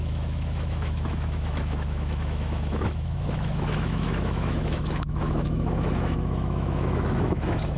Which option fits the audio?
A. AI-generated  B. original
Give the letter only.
A